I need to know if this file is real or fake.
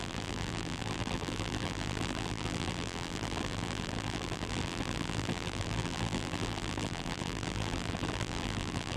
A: fake